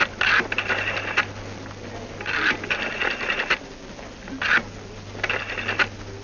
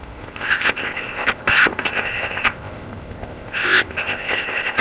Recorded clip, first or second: first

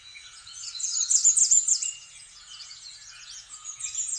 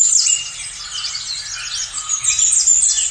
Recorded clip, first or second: second